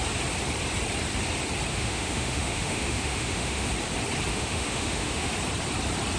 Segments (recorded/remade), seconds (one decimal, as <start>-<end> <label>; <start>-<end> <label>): 0.0-1.7 recorded; 1.7-3.7 remade; 3.7-4.3 recorded; 4.3-5.3 remade; 5.3-6.2 recorded